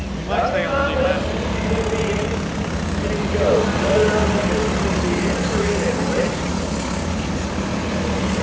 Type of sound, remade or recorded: recorded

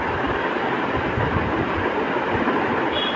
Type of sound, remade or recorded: recorded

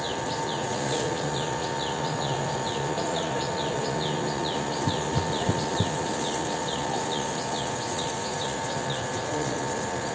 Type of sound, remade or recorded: remade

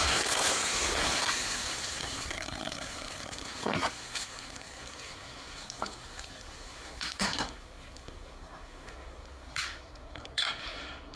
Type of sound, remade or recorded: remade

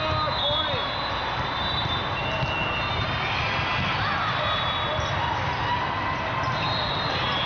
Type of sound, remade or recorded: recorded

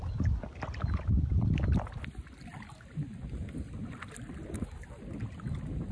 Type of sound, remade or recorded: recorded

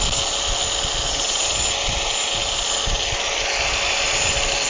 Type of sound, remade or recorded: recorded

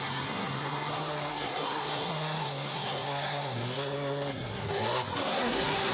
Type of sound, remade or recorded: remade